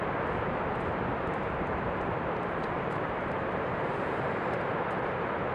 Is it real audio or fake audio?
fake